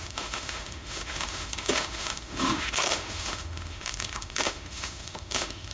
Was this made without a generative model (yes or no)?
no